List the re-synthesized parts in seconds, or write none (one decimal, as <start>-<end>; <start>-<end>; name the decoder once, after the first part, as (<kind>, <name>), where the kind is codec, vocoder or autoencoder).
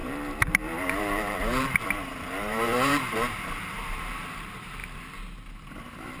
0.0-4.8 (vocoder, BigVGAN v2); 5.8-6.2